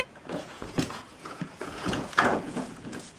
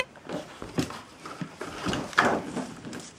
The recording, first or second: second